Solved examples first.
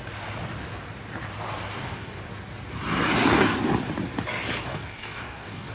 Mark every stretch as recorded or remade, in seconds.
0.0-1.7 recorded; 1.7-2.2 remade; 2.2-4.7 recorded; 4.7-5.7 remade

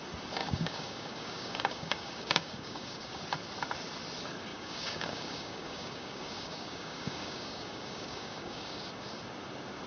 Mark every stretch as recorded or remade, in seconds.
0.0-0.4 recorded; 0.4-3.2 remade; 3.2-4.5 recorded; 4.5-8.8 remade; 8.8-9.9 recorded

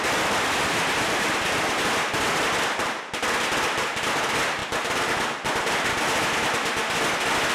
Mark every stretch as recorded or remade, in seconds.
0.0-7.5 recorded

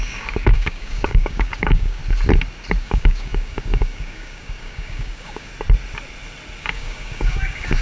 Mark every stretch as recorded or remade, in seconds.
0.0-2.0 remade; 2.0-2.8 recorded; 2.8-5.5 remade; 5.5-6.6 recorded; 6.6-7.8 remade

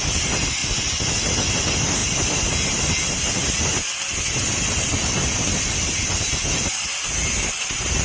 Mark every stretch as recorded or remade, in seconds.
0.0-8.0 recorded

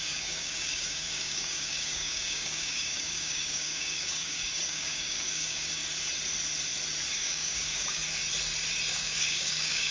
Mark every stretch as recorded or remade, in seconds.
0.0-5.8 remade; 5.8-7.1 recorded; 7.1-8.0 remade; 8.0-8.9 recorded; 8.9-9.9 remade

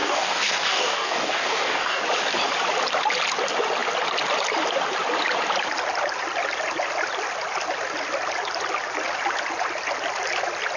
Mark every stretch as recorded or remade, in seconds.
0.0-2.0 remade; 2.0-10.8 recorded

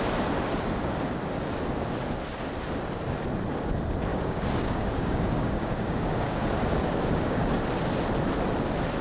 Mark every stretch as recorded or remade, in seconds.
0.0-4.1 recorded; 4.1-7.5 remade; 7.5-9.0 recorded